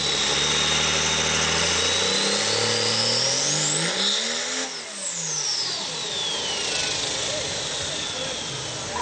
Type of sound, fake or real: real